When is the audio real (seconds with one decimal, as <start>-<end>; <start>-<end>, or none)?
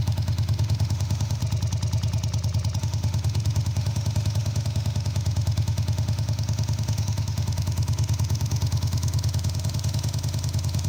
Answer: 1.4-2.8